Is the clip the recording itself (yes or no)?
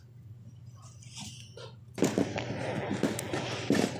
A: yes